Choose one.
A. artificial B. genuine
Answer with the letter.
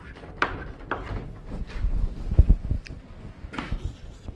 B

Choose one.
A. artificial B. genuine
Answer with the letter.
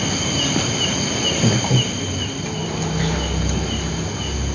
B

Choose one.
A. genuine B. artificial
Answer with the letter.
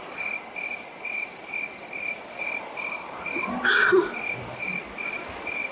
A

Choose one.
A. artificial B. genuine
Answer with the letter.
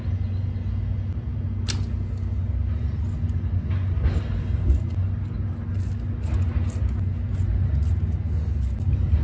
B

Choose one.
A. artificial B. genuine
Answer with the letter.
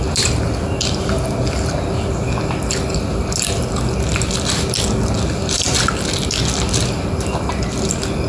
B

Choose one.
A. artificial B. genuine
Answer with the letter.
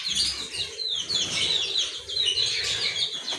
B